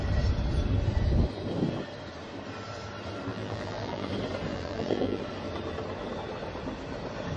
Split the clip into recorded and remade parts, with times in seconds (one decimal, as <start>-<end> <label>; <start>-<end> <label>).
0.0-3.3 recorded; 3.3-4.1 remade; 4.1-4.5 recorded; 4.5-5.2 remade; 5.2-7.4 recorded